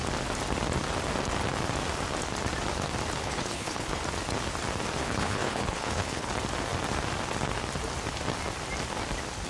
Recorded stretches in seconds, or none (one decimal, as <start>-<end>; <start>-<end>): 0.0-3.2; 4.0-5.0; 6.3-9.5

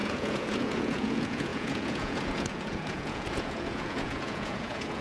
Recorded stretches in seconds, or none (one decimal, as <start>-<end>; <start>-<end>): none

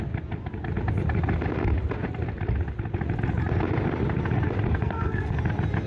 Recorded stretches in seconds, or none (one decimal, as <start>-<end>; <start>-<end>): 0.0-4.7; 5.4-5.9